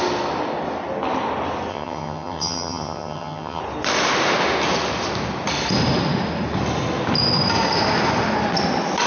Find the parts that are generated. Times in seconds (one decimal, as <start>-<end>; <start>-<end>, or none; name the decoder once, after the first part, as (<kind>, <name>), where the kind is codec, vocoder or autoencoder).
1.7-3.6 (vocoder, HiFi-GAN)